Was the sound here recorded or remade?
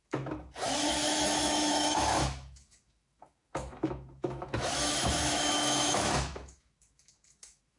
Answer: remade